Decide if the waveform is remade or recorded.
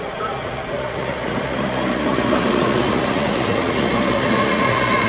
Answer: remade